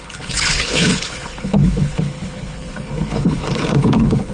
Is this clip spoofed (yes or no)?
yes